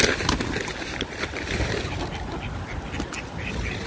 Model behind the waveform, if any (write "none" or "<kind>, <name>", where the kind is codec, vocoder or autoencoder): none